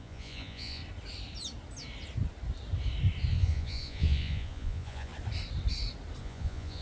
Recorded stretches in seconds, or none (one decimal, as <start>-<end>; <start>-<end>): 0.8-3.3; 5.1-6.2